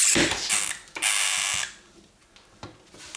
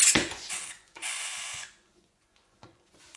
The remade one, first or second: second